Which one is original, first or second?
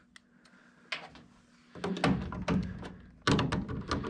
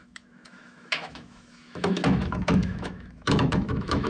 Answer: first